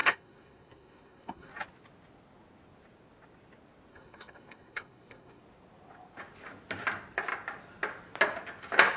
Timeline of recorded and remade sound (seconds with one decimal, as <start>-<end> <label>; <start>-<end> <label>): 0.0-1.5 remade; 1.5-3.9 recorded; 3.9-5.4 remade; 5.4-9.0 recorded